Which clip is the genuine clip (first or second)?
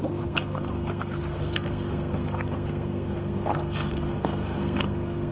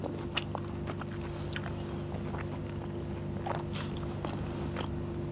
second